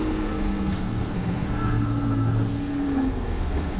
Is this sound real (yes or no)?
no